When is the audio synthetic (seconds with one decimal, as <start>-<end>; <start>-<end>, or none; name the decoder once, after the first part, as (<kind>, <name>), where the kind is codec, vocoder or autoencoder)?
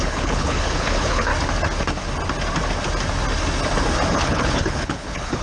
0.0-1.3 (codec, HILCodec); 4.1-5.4